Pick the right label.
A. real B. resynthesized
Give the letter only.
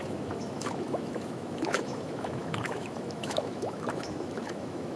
B